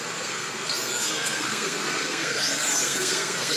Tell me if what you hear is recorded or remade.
remade